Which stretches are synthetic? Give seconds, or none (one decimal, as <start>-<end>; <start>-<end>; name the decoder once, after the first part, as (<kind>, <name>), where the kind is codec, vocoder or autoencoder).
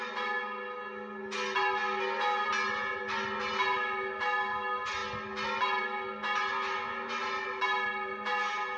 none